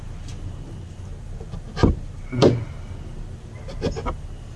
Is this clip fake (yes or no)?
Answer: no